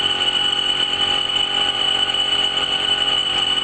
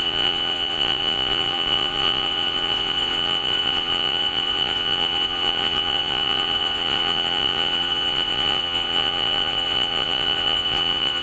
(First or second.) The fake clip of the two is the second